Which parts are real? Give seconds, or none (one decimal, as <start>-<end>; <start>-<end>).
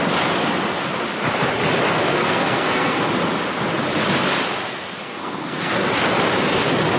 0.0-2.1; 3.0-5.0; 5.7-7.0